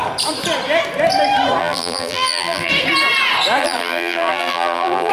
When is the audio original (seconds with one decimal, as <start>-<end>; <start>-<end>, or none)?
0.0-1.6; 2.7-3.6